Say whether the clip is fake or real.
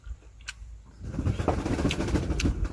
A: real